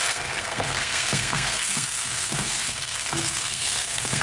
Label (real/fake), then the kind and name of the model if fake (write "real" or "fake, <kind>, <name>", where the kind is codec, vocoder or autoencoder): fake, codec, SNAC